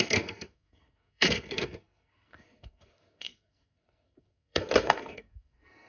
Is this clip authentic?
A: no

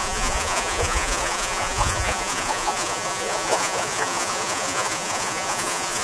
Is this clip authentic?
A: no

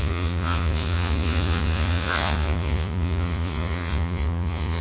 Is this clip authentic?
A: no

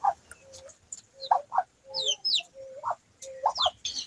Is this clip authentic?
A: yes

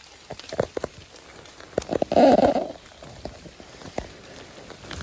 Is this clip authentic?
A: yes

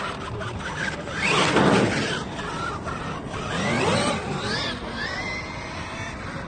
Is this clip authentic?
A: yes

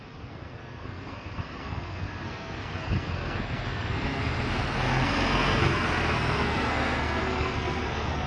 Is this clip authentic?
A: no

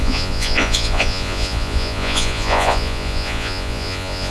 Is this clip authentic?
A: no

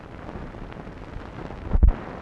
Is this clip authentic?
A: yes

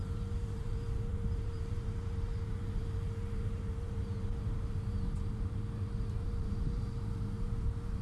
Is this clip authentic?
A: no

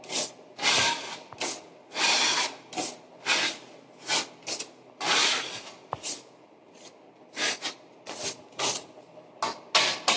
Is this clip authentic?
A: yes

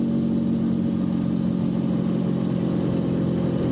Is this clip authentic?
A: yes